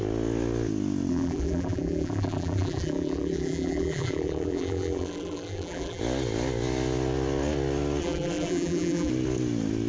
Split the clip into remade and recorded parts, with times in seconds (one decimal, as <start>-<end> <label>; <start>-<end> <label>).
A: 0.0-1.1 recorded; 1.1-6.0 remade; 6.0-8.0 recorded; 8.0-9.1 remade; 9.1-9.9 recorded